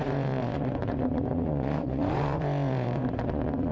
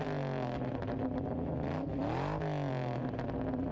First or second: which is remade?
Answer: first